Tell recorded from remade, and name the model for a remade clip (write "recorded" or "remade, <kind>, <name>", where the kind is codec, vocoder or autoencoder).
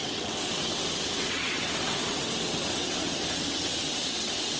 remade, vocoder, WaveNeXt